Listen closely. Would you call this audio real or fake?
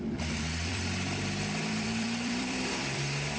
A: fake